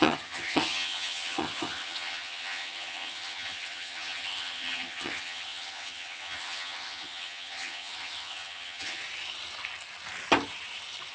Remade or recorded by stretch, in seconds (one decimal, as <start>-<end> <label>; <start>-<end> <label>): 0.0-9.0 remade; 9.0-11.1 recorded